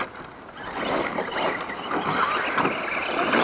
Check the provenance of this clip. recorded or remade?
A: recorded